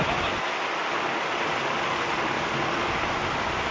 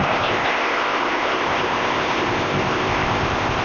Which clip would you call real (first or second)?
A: first